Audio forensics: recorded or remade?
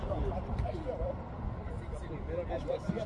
recorded